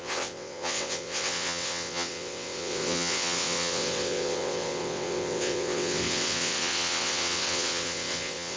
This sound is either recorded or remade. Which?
remade